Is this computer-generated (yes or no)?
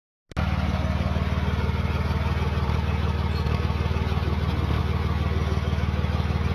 no